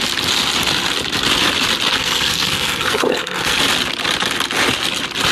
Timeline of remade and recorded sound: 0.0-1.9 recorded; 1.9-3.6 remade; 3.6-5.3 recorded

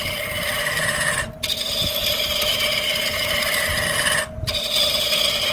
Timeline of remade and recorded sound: 0.0-5.5 recorded

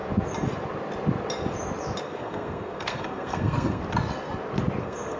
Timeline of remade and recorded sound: 0.0-2.0 recorded; 2.0-3.8 remade; 3.8-4.8 recorded; 4.8-5.2 remade

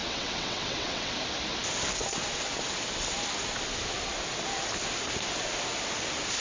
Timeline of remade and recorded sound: 0.0-1.1 remade; 1.1-6.4 recorded

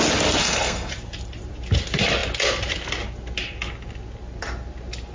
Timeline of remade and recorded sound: 0.0-0.4 recorded; 0.4-0.9 remade; 0.9-5.1 recorded

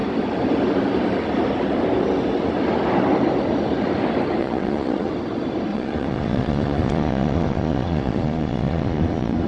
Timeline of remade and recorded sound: 0.0-4.4 recorded; 4.4-5.1 remade; 5.1-5.7 recorded; 5.7-9.5 remade